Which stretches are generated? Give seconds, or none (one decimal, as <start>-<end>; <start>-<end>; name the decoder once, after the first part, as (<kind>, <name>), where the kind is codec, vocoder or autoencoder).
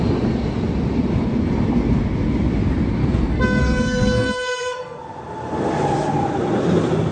3.0-5.0 (codec, SNAC)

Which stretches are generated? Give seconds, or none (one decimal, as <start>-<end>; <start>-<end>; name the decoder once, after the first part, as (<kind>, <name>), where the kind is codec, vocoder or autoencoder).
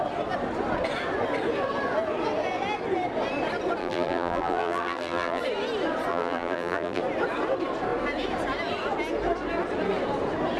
3.8-5.4 (vocoder, BigVGAN v2); 6.1-7.0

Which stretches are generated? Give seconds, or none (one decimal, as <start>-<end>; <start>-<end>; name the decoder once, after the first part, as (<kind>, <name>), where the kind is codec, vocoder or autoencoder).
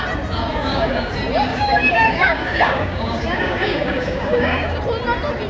0.5-1.1 (codec, DAC); 1.5-4.8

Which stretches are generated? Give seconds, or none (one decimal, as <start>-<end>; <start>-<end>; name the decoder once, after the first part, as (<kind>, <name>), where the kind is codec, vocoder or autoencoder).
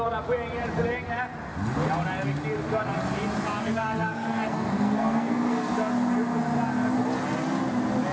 3.6-5.7 (codec, SNAC)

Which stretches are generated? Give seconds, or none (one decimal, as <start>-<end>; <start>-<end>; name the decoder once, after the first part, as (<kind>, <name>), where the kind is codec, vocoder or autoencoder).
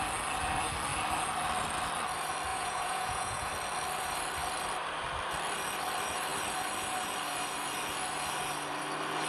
2.5-3.5 (vocoder, Vocos)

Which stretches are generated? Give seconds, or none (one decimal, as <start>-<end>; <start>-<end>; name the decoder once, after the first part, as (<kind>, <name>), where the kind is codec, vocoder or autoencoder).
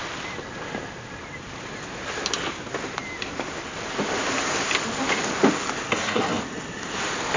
5.9-6.4 (codec, SNAC)